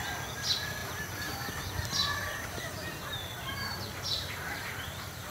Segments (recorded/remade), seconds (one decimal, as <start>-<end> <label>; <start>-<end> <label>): 0.0-0.8 recorded; 0.8-1.5 remade; 1.5-2.0 recorded; 2.0-5.3 remade